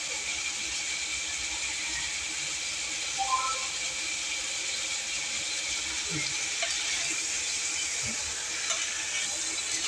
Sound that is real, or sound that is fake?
real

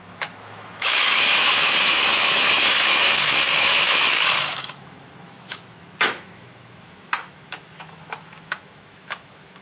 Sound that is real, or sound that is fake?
fake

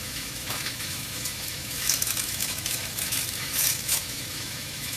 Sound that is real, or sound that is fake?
fake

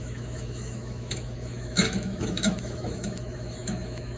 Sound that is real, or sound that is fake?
fake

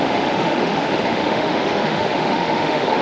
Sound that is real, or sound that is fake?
fake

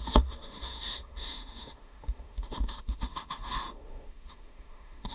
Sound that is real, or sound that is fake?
fake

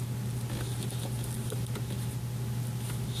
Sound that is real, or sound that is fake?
real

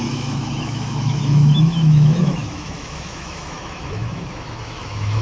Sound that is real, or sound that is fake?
fake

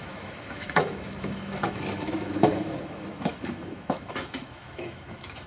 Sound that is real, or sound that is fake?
fake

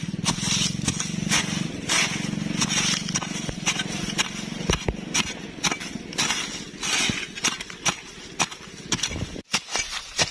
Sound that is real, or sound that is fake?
real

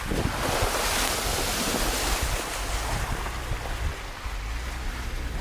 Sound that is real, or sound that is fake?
real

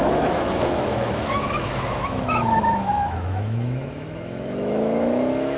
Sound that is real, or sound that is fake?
fake